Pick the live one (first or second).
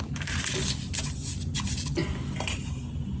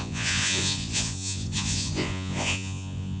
first